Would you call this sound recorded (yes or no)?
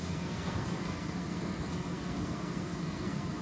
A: no